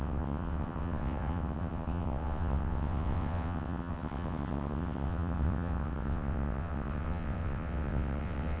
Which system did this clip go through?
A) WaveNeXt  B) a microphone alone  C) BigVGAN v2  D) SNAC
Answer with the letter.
A